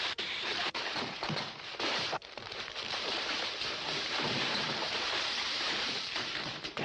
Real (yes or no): no